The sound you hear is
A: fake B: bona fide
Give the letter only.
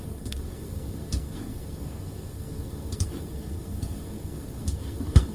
A